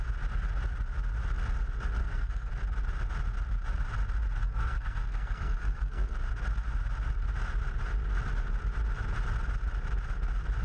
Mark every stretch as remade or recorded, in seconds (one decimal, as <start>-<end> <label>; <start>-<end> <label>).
0.0-2.0 recorded; 2.0-2.5 remade; 2.5-4.4 recorded; 4.4-6.2 remade; 6.2-10.6 recorded